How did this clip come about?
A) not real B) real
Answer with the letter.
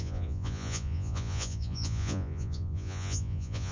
A